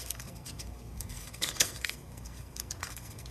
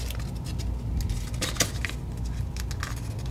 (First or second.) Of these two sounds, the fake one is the first